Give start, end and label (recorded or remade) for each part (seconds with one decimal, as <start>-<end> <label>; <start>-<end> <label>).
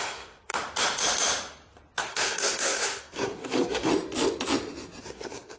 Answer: 0.0-0.5 remade; 0.5-2.0 recorded; 2.0-3.9 remade; 3.9-5.0 recorded; 5.0-5.6 remade